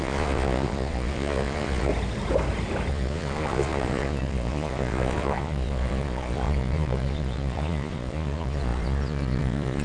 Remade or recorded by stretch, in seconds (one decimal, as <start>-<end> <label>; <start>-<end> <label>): 0.0-1.9 remade; 1.9-2.9 recorded; 2.9-9.8 remade